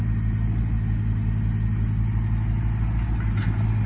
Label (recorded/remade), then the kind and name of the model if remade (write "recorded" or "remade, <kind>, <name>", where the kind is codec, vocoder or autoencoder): recorded